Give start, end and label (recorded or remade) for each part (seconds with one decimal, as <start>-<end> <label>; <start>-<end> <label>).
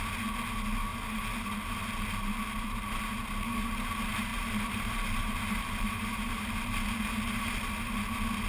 0.0-0.9 recorded; 0.9-3.0 remade; 3.0-4.3 recorded; 4.3-7.4 remade; 7.4-8.5 recorded